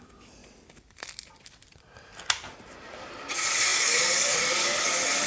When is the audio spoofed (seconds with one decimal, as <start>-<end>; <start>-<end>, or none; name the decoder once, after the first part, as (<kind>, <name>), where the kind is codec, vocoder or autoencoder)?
0.0-0.4 (codec, DAC); 3.3-5.3